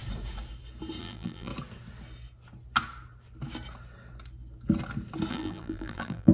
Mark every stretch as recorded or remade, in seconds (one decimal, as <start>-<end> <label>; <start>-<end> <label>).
0.0-1.0 recorded; 1.0-1.5 remade; 1.5-5.3 recorded; 5.3-6.3 remade